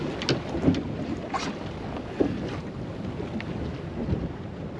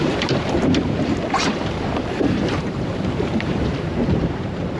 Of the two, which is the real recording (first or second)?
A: first